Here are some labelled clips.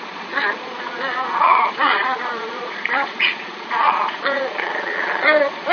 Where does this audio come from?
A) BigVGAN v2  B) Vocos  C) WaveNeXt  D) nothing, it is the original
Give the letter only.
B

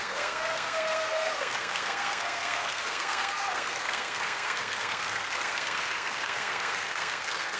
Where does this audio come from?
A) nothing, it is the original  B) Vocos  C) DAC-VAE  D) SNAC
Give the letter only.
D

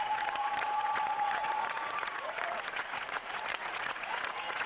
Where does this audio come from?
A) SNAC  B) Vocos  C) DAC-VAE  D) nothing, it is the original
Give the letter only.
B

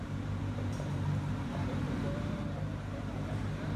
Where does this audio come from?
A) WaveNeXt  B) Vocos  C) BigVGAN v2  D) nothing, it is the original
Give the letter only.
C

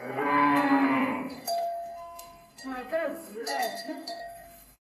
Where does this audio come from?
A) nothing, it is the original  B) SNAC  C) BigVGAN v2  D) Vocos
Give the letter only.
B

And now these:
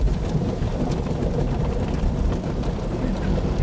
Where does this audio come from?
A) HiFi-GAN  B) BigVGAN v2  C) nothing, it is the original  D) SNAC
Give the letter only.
C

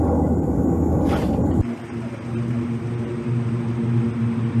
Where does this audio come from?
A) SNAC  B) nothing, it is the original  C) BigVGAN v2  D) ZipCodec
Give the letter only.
B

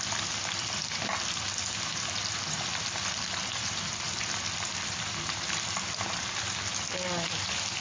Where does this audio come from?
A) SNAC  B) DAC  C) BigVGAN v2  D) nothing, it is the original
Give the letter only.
D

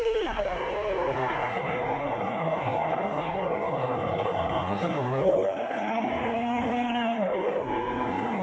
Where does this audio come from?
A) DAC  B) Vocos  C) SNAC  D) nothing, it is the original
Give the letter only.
C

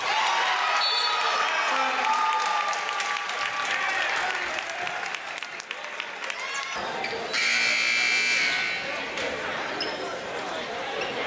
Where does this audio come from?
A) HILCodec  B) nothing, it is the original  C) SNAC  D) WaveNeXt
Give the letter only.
B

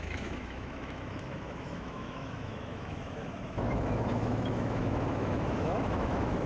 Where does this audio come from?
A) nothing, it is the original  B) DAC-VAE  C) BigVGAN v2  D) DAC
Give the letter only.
B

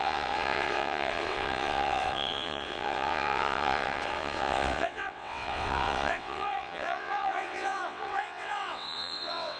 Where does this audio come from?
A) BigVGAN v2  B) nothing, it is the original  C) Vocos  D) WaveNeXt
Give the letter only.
D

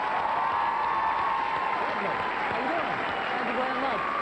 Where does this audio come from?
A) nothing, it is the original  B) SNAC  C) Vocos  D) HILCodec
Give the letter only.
A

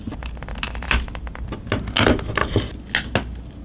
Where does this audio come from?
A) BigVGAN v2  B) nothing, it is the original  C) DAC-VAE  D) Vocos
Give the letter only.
B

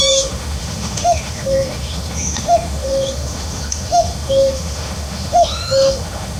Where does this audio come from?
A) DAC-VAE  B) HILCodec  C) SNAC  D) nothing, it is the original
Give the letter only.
A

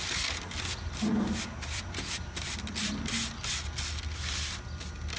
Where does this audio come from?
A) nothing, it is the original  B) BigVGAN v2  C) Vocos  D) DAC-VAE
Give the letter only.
A